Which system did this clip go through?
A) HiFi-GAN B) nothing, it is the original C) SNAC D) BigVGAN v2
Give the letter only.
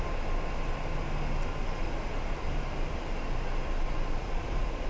B